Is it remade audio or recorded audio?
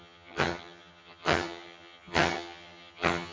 remade